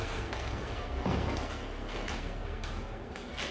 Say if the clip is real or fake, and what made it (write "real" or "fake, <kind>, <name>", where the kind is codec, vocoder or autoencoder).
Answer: fake, codec, SNAC